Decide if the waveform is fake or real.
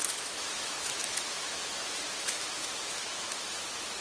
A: fake